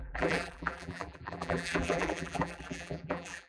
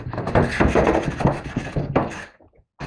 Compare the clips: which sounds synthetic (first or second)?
first